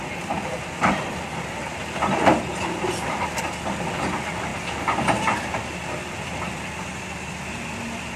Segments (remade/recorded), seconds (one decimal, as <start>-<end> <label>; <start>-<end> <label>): 0.0-8.2 recorded